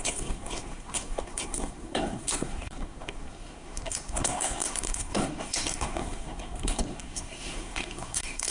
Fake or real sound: fake